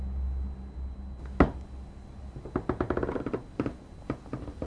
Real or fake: real